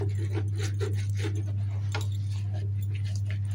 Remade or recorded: recorded